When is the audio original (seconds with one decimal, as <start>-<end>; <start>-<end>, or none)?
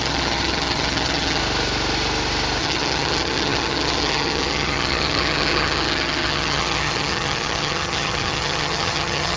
1.4-2.6